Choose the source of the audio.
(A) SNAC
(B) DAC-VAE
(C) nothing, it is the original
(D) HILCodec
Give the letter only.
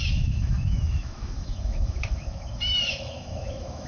B